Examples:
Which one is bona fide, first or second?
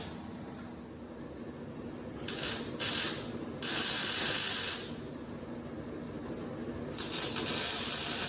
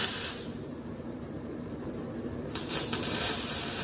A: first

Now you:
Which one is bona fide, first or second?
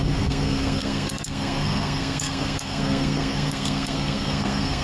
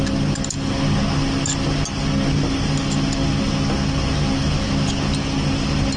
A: second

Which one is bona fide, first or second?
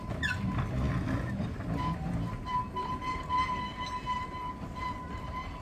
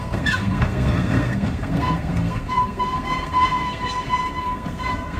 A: first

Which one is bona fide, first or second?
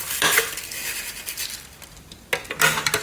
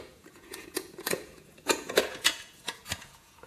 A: first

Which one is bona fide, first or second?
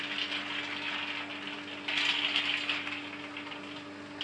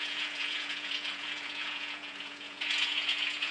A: first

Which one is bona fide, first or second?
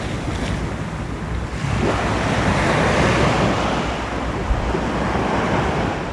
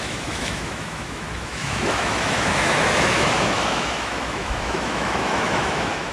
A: first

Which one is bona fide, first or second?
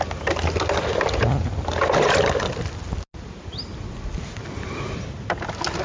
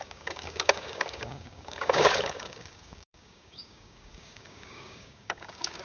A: first